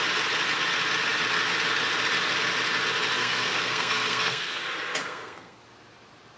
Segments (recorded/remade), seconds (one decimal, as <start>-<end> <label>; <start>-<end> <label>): 0.0-3.2 recorded; 3.2-4.6 remade; 4.6-5.0 recorded; 5.0-5.6 remade; 5.6-6.4 recorded